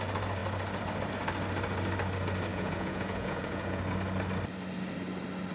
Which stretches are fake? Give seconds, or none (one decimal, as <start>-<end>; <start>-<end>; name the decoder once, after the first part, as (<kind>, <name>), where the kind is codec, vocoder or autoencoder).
2.5-3.8 (vocoder, Vocos)